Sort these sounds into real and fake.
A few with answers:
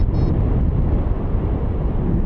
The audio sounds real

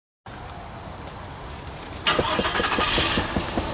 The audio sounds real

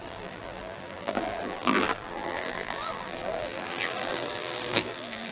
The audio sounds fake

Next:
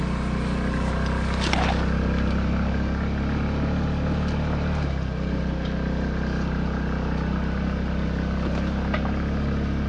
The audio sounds real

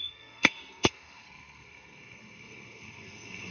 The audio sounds fake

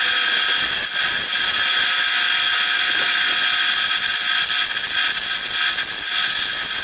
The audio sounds real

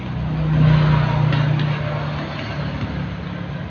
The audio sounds real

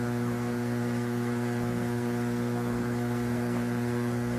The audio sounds fake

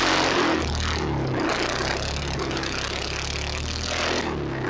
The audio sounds real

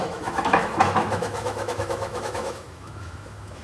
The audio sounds fake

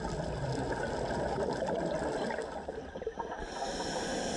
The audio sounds real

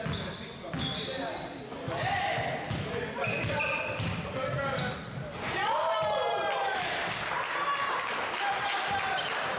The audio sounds real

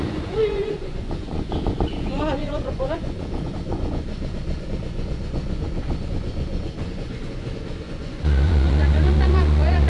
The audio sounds fake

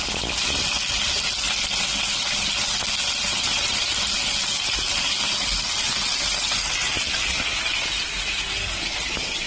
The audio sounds real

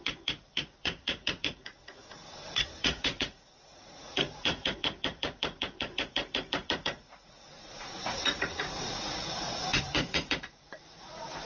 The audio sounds fake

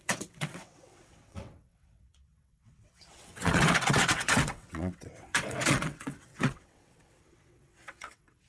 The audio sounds fake